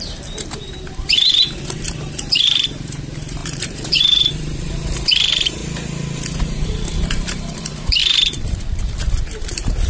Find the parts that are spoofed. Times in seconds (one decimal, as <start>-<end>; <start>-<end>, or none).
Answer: 0.0-5.6; 6.3-9.9